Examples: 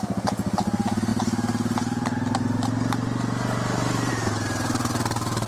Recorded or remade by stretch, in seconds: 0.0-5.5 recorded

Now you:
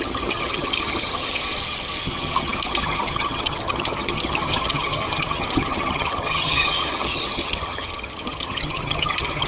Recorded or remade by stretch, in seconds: 0.0-9.5 remade